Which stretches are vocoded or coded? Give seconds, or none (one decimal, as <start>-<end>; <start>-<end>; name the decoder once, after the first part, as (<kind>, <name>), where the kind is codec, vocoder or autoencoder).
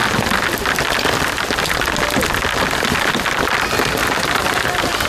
4.0-5.1 (vocoder, BigVGAN v2)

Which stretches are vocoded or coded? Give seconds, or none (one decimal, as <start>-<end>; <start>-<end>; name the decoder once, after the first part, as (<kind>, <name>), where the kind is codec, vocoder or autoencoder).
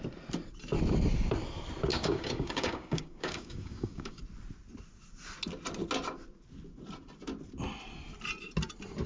1.9-4.2 (codec, DAC)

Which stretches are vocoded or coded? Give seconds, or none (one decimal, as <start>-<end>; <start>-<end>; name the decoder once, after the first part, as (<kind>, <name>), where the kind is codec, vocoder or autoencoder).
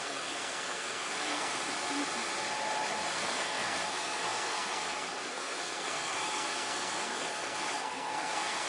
0.0-1.5 (codec, SNAC); 3.1-8.7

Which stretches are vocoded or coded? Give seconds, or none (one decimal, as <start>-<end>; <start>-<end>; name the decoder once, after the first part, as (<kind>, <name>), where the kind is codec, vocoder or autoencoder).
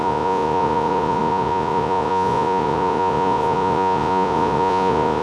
0.0-5.2 (vocoder, Vocos)